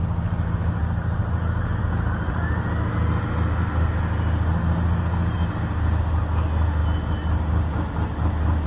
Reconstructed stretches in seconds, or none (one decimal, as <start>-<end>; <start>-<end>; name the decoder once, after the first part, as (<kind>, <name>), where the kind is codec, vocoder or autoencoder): none

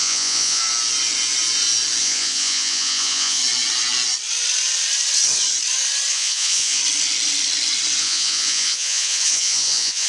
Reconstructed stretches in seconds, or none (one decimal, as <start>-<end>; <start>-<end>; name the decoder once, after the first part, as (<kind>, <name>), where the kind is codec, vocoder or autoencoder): 0.0-0.6 (vocoder, Vocos); 2.0-3.4; 6.1-6.8; 8.0-10.1

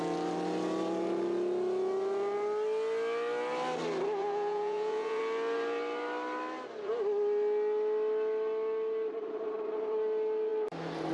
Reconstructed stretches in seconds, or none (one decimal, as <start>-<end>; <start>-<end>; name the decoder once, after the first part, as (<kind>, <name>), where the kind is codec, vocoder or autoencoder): 4.2-5.2 (vocoder, Vocos)

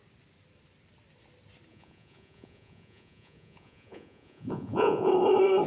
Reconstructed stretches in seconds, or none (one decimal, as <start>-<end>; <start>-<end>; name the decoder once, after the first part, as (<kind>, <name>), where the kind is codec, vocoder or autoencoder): 1.7-5.1 (vocoder, Vocos)

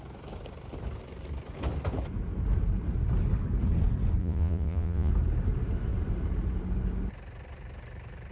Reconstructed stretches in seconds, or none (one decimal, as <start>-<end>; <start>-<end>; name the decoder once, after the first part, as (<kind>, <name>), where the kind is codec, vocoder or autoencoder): 4.2-5.1 (vocoder, Vocos)